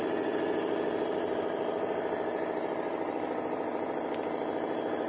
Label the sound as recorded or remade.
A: remade